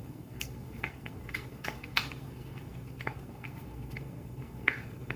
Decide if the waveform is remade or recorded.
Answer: remade